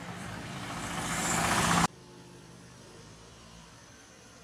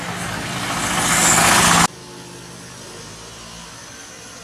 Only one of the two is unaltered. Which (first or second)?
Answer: second